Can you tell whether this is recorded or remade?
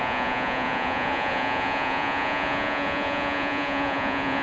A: remade